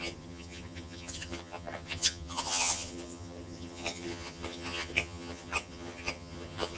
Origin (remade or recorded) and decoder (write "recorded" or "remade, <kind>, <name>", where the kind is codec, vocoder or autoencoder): remade, vocoder, HiFi-GAN